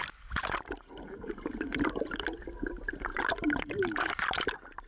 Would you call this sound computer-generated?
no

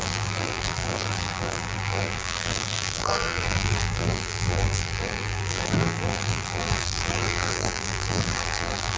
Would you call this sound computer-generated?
yes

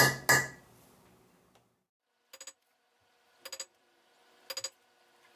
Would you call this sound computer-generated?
no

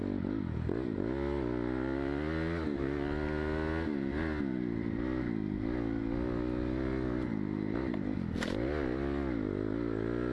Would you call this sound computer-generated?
no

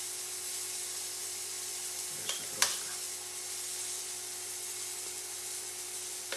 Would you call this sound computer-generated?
no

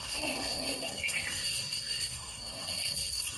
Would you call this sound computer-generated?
yes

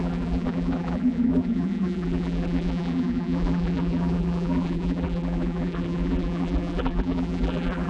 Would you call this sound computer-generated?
yes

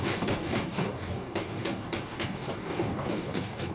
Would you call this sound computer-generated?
yes